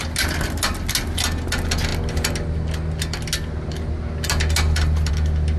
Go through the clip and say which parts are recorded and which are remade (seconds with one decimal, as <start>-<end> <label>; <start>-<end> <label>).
0.0-5.6 recorded